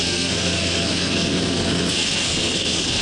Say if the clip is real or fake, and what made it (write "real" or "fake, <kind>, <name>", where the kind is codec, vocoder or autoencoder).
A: fake, codec, SNAC